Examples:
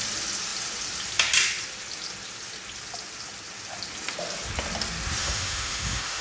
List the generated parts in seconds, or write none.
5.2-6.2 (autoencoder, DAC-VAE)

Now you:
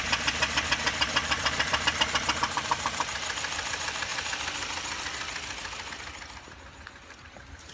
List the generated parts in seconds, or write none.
none

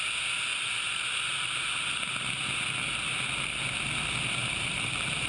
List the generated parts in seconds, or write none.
4.4-5.3 (vocoder, BigVGAN v2)

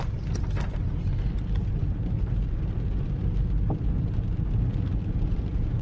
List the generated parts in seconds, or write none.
none

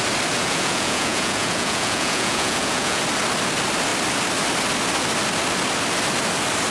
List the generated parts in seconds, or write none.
0.4-3.0 (vocoder, Vocos)

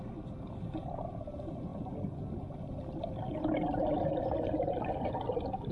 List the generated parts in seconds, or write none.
none

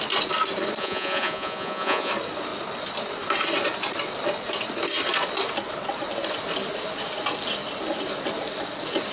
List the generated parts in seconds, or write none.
0.8-2.1 (vocoder, Vocos)